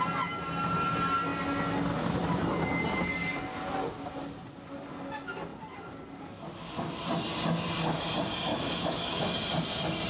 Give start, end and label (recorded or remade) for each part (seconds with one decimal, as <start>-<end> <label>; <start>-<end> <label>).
0.0-8.5 recorded; 8.5-9.2 remade; 9.2-10.1 recorded

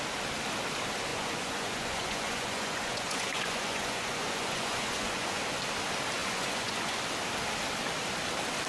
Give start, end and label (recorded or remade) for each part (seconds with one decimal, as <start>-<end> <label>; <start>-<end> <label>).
0.0-1.1 recorded; 1.1-5.4 remade; 5.4-6.2 recorded; 6.2-7.0 remade; 7.0-8.7 recorded

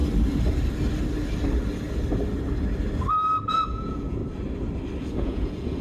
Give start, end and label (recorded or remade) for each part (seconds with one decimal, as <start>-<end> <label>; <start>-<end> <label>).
0.0-3.5 recorded; 3.5-4.2 remade; 4.2-5.0 recorded; 5.0-5.8 remade

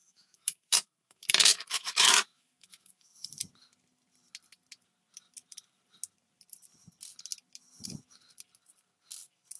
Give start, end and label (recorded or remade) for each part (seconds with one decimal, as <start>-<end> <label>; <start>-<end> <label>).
0.0-3.4 remade; 3.4-9.6 recorded

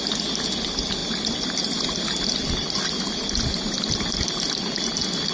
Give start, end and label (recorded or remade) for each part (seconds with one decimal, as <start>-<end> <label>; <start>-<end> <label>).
0.0-1.0 recorded; 1.0-4.2 remade; 4.2-5.3 recorded

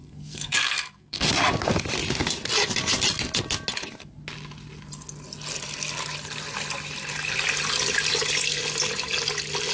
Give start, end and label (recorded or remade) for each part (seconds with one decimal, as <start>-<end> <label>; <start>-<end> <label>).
0.0-1.3 remade; 1.3-9.7 recorded